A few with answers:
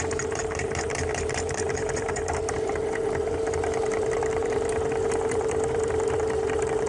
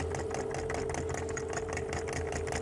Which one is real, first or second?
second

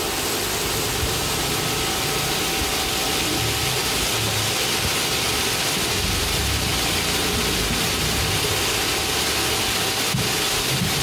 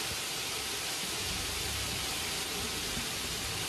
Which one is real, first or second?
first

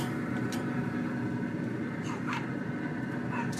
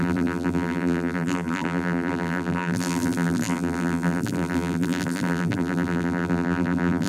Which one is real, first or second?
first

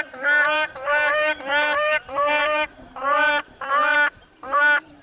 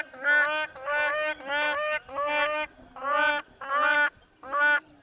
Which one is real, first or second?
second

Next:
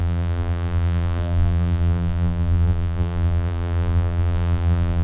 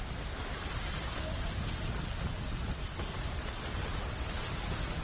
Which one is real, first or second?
second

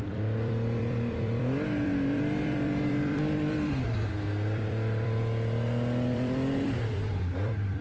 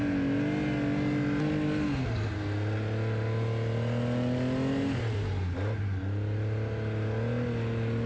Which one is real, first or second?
second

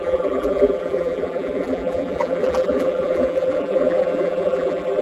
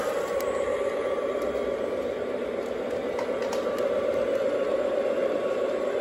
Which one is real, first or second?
second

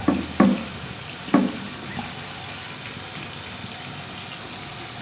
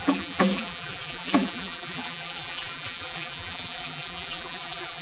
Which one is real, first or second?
first